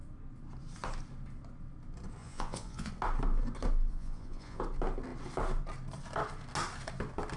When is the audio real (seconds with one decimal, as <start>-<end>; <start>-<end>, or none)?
0.0-2.2; 2.9-3.9; 4.6-7.4

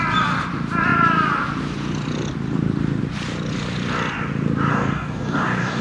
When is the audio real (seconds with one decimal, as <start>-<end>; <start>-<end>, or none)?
0.0-4.7

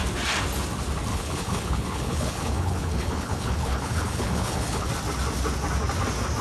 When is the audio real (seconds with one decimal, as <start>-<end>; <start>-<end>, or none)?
0.0-1.1; 4.9-6.4

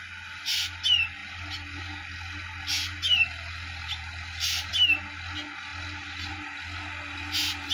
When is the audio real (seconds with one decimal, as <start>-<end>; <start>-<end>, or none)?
0.0-7.7

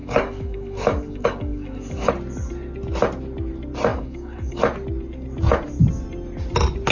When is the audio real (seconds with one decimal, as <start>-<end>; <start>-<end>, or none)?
2.1-3.9; 4.6-6.9

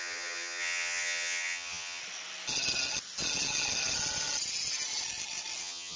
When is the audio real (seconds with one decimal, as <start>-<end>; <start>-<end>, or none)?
2.0-5.6

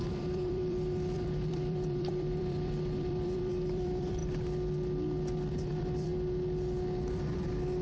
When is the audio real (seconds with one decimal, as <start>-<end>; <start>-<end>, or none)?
4.2-5.5; 6.1-7.1

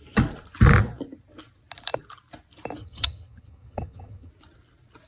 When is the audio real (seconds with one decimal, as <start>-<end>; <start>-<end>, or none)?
0.0-2.8; 4.3-5.1